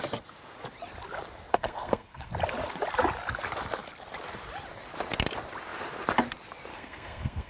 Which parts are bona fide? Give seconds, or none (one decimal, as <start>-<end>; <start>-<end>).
0.0-1.5; 2.3-6.7